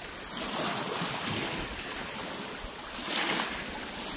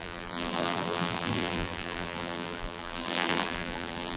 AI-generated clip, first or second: second